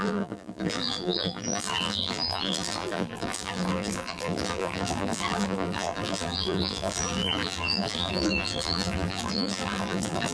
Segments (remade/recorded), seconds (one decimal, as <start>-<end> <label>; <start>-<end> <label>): 0.0-10.3 remade